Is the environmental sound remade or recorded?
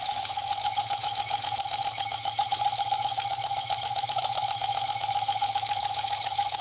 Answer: remade